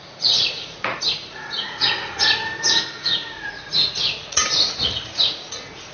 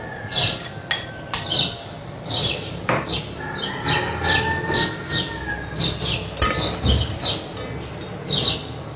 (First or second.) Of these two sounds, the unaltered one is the second